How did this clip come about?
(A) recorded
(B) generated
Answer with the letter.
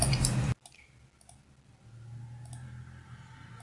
A